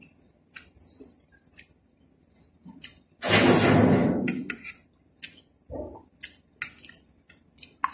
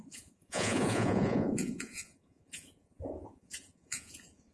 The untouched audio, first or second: first